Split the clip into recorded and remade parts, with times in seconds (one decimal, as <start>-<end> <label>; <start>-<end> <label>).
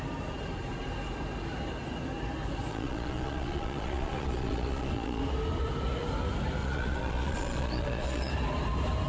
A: 0.0-2.7 recorded; 2.7-5.2 remade; 5.2-6.6 recorded; 6.6-8.3 remade; 8.3-9.1 recorded